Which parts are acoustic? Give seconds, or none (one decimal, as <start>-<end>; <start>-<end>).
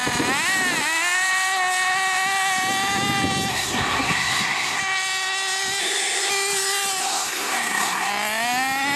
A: 0.0-3.5; 4.8-5.8; 6.3-7.0; 8.1-9.0